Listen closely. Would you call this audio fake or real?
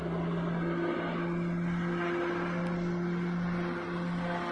real